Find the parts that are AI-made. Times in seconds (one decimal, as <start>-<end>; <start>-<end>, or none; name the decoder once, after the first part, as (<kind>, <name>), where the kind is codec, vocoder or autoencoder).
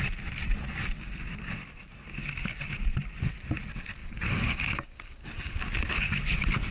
4.0-5.6 (codec, DAC)